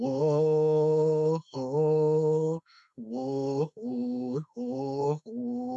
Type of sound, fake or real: fake